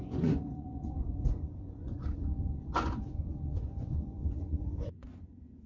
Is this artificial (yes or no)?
yes